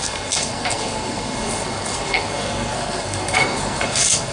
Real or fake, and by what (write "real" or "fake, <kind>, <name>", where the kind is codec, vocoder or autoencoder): fake, codec, SNAC